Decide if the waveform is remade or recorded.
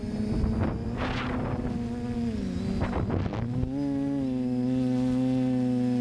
recorded